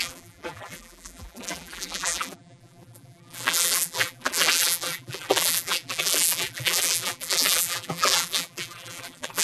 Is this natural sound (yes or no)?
no